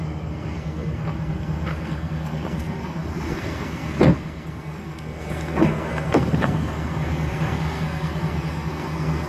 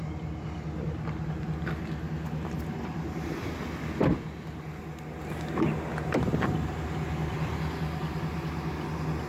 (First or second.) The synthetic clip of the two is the first